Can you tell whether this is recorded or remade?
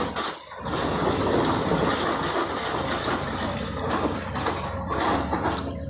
recorded